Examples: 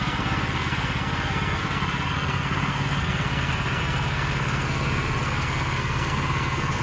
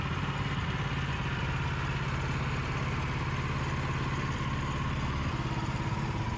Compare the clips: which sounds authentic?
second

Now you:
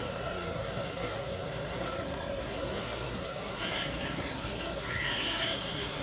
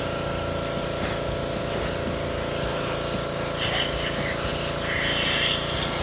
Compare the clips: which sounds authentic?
second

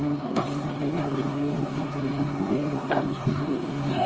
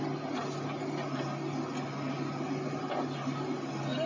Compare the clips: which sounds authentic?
second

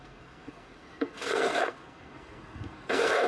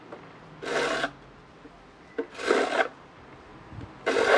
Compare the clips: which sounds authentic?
second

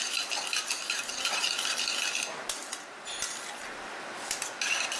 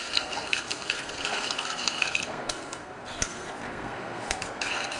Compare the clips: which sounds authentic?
first